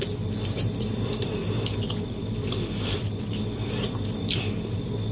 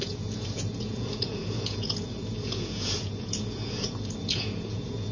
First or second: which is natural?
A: first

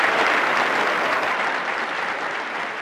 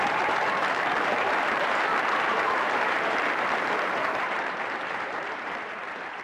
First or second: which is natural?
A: first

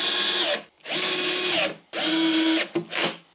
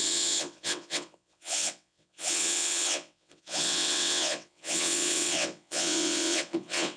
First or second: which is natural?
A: first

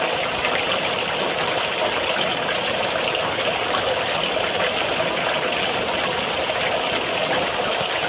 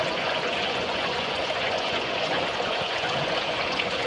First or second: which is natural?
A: first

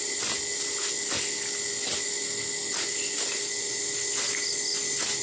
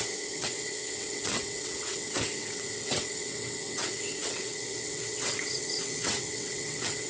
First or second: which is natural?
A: first